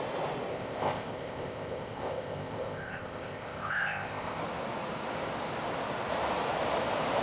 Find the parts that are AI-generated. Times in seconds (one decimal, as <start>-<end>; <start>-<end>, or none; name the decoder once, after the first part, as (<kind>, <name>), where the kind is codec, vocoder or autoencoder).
0.5-4.4 (codec, ZipCodec)